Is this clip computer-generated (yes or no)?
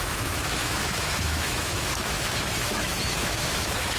yes